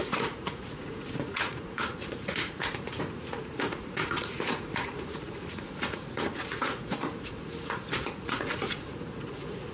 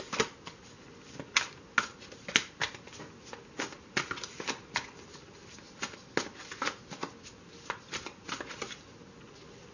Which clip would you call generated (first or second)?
first